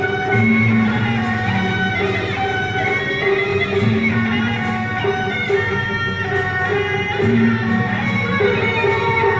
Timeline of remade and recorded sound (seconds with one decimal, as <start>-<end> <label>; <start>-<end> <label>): 0.0-9.4 remade